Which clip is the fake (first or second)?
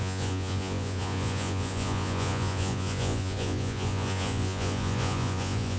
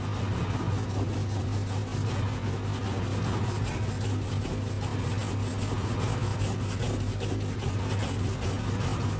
first